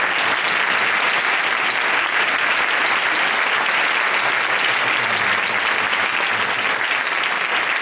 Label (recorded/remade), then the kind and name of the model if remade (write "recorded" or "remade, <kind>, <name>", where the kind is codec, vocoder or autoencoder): recorded